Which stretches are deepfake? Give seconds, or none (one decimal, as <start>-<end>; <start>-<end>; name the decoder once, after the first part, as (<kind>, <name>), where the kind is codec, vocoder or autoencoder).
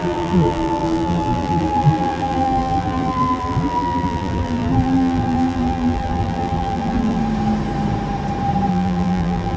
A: 0.0-7.2 (vocoder, BigVGAN v2); 8.7-9.6